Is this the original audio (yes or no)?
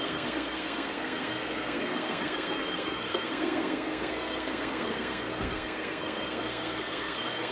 no